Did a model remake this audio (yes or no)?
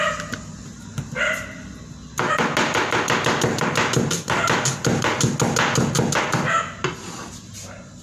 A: no